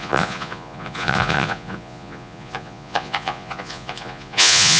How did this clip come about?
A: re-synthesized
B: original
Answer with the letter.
A